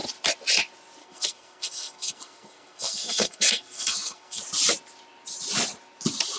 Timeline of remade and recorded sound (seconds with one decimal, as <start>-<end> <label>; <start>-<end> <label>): 0.0-1.0 recorded; 1.0-4.4 remade; 4.4-6.4 recorded